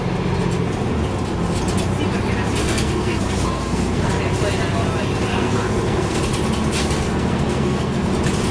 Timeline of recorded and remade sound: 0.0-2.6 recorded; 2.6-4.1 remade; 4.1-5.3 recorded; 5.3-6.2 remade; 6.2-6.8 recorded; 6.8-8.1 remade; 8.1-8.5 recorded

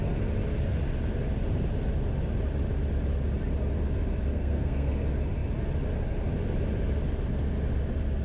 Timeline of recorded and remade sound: 0.0-4.3 recorded; 4.3-4.9 remade; 4.9-8.2 recorded